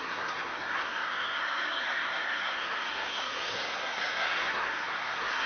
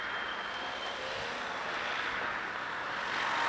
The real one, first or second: second